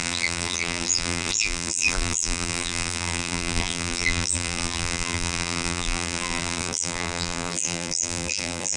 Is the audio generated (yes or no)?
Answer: yes